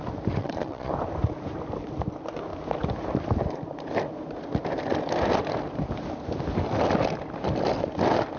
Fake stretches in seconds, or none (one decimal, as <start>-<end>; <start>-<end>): 0.4-0.9